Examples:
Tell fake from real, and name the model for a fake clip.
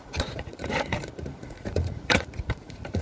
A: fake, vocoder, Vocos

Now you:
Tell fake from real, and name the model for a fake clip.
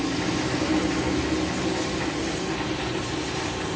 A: real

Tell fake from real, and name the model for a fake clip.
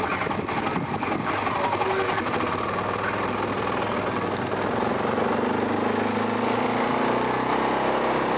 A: real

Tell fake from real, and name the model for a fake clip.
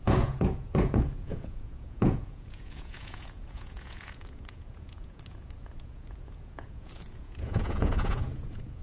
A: fake, vocoder, Vocos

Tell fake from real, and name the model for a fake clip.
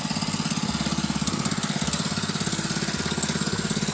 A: real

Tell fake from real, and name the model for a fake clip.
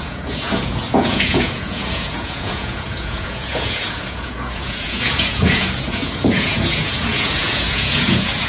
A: fake, vocoder, Vocos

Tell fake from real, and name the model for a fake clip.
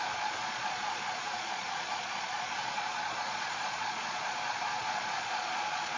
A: fake, vocoder, Vocos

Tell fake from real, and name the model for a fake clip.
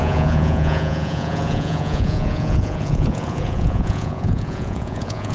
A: fake, vocoder, Vocos